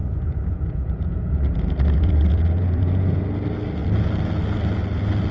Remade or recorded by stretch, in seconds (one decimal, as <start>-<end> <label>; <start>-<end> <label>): 0.0-3.2 remade; 3.2-5.3 recorded